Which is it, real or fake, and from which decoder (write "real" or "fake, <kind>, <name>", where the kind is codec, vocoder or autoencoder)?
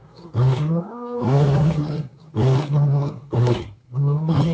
fake, codec, SNAC